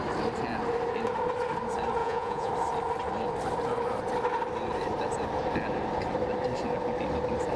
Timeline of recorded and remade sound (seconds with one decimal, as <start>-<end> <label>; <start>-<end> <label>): 0.0-2.0 recorded; 2.0-2.5 remade; 2.5-7.6 recorded